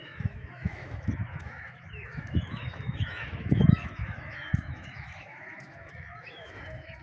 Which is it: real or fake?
fake